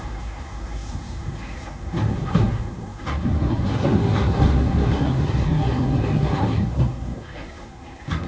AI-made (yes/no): yes